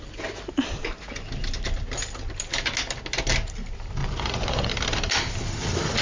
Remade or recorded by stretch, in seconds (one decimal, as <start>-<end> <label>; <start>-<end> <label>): 0.0-4.0 recorded; 4.0-4.7 remade; 4.7-6.0 recorded